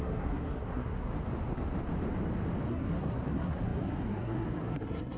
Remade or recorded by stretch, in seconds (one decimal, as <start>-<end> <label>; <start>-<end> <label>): 0.0-1.1 remade; 1.1-2.7 recorded; 2.7-5.2 remade